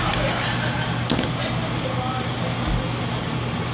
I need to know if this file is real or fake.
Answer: real